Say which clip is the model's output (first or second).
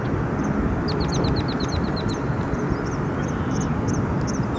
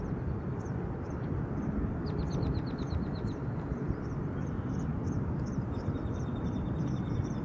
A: second